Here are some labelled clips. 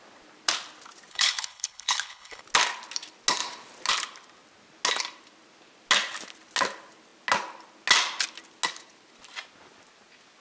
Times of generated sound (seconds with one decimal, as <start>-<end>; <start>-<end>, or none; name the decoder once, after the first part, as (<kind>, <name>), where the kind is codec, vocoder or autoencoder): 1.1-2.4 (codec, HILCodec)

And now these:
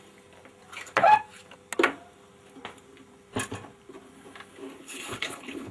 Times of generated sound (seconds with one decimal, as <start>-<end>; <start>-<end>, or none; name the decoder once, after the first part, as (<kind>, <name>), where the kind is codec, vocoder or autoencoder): 4.8-5.7 (codec, HILCodec)

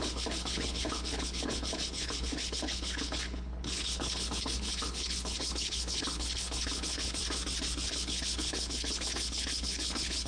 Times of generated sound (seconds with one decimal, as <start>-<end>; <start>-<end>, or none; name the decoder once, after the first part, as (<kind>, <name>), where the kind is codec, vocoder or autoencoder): 0.0-7.2 (codec, HILCodec); 7.9-10.3